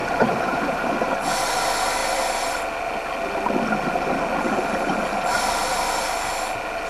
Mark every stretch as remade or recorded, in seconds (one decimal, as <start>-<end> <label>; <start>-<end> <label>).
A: 0.0-0.9 remade; 0.9-6.9 recorded

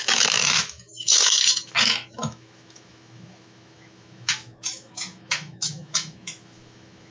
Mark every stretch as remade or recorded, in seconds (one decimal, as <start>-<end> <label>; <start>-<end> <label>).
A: 0.0-7.1 remade

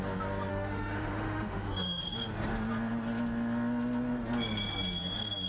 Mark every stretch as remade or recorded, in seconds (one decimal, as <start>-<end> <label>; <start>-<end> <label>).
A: 0.0-0.5 recorded; 0.5-2.0 remade; 2.0-5.5 recorded

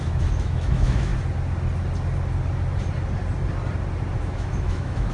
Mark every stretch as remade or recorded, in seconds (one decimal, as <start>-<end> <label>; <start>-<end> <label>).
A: 0.0-1.1 remade; 1.1-4.2 recorded; 4.2-5.1 remade

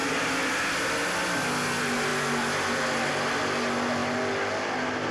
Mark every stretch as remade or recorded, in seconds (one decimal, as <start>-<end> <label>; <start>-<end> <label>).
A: 0.0-0.6 remade; 0.6-2.1 recorded; 2.1-3.1 remade; 3.1-5.1 recorded